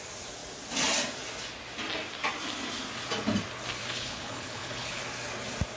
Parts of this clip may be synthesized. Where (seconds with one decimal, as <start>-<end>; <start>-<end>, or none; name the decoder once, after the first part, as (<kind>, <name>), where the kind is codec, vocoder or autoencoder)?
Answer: 3.8-5.0 (codec, HILCodec)